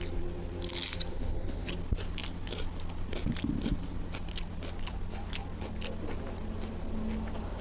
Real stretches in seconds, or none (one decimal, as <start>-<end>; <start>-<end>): 0.0-1.1; 1.7-7.6